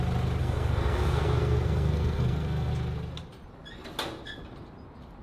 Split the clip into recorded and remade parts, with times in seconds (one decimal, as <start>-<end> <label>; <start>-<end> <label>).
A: 0.0-0.4 recorded; 0.4-2.7 remade; 2.7-5.2 recorded